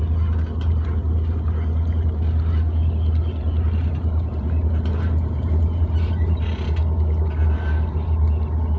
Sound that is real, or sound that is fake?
real